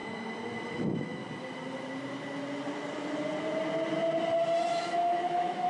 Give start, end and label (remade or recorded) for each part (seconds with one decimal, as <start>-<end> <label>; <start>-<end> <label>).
0.0-0.7 recorded; 0.7-1.2 remade; 1.2-4.6 recorded; 4.6-5.7 remade